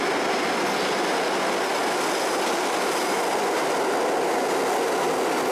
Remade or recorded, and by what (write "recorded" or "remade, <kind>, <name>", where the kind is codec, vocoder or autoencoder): recorded